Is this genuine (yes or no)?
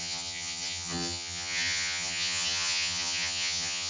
no